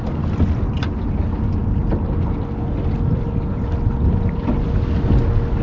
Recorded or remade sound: recorded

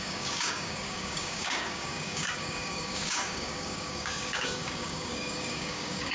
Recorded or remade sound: remade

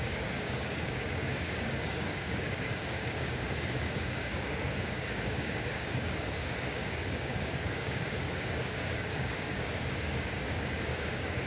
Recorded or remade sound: remade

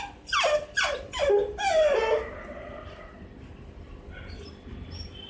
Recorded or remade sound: recorded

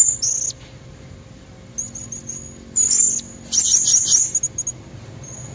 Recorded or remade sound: recorded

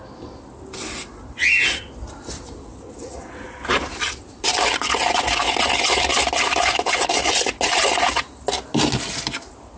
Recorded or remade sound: recorded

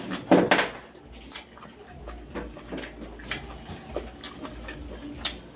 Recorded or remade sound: recorded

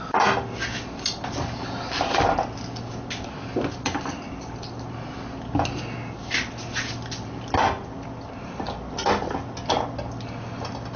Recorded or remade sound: recorded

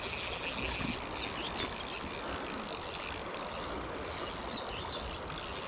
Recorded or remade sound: recorded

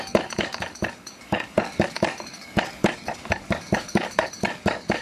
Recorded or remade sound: remade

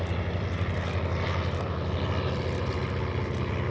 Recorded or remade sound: recorded